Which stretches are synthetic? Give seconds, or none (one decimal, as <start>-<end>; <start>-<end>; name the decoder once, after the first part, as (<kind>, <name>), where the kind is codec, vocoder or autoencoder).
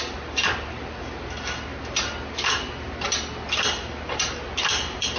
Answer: none